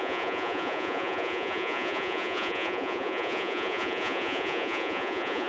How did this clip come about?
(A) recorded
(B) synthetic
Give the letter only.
B